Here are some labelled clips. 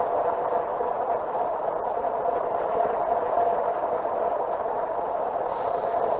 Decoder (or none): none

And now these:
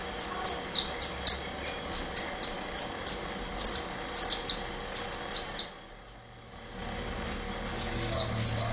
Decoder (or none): none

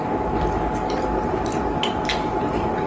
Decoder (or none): none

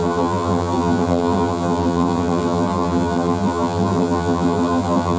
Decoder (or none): vocoder, BigVGAN v2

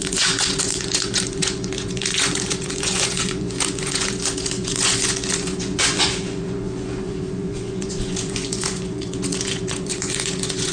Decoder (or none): vocoder, Vocos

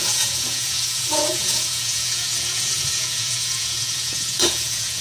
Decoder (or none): vocoder, Vocos